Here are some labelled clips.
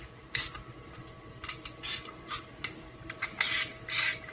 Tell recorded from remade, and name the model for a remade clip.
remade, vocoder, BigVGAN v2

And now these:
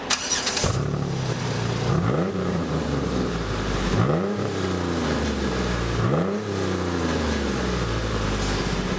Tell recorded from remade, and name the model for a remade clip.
remade, vocoder, BigVGAN v2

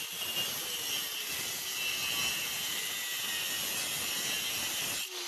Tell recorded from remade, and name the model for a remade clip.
recorded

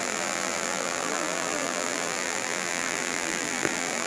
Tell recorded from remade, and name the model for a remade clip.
remade, vocoder, BigVGAN v2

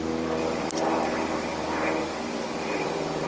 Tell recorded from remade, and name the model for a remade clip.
remade, vocoder, BigVGAN v2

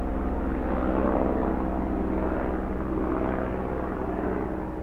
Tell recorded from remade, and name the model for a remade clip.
recorded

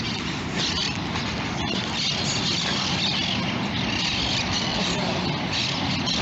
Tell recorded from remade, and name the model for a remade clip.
recorded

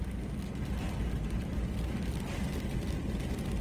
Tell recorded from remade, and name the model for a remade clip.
recorded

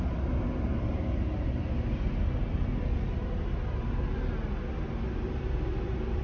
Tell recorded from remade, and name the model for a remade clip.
recorded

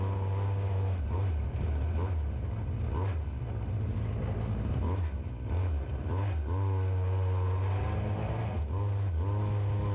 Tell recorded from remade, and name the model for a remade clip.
recorded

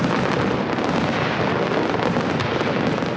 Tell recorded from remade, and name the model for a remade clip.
recorded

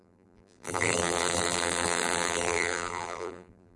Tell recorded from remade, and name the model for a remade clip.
remade, vocoder, BigVGAN v2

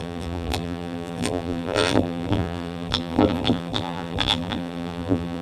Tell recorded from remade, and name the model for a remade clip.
remade, vocoder, BigVGAN v2